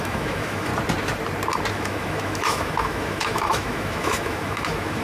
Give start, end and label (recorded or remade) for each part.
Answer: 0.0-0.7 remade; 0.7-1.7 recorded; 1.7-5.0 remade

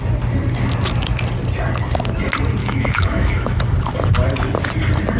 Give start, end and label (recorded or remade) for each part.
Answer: 0.0-2.6 recorded; 2.6-3.6 remade; 3.6-5.2 recorded

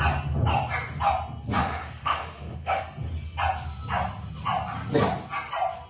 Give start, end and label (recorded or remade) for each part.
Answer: 0.0-1.6 recorded; 1.6-2.8 remade; 2.8-5.9 recorded

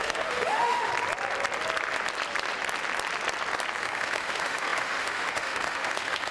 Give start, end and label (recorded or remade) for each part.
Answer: 0.0-0.9 remade; 0.9-3.8 recorded; 3.8-6.3 remade

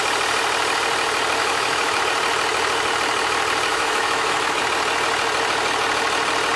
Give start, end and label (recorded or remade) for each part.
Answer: 0.0-1.4 recorded; 1.4-2.0 remade; 2.0-3.7 recorded; 3.7-4.6 remade; 4.6-6.6 recorded

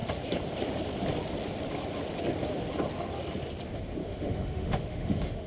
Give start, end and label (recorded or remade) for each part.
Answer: 0.0-4.0 recorded; 4.0-5.5 remade